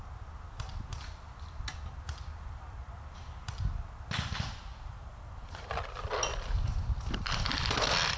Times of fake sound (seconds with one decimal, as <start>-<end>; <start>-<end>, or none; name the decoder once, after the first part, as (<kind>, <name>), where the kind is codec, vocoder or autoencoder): none